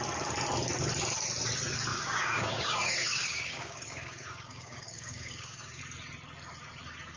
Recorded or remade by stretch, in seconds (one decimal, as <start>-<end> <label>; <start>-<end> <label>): 0.0-1.9 recorded; 1.9-5.8 remade; 5.8-7.2 recorded